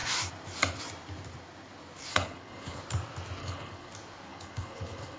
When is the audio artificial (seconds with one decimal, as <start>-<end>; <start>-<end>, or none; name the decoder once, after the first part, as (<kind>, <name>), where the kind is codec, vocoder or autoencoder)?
2.1-2.8 (codec, HILCodec); 3.4-3.9; 4.3-5.2